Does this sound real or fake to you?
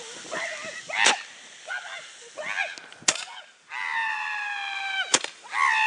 real